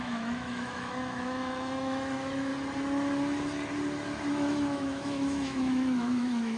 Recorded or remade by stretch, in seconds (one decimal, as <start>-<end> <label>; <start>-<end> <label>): 0.0-2.5 remade; 2.5-4.3 recorded; 4.3-6.6 remade